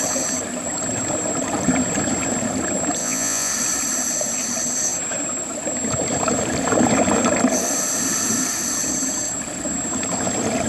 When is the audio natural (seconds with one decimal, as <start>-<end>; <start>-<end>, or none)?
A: 0.0-3.0; 3.5-10.7